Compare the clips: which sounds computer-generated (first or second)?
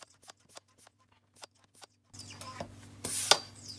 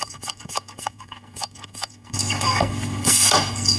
second